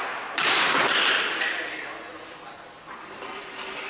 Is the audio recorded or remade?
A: recorded